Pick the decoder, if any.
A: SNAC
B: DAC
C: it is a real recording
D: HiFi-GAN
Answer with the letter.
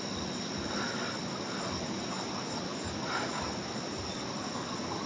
C